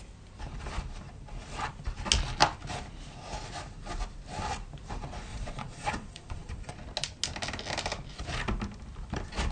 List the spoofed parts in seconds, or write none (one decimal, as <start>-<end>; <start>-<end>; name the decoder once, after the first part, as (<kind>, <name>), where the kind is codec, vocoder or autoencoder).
5.3-6.7 (vocoder, Vocos)